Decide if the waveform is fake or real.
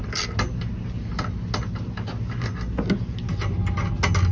real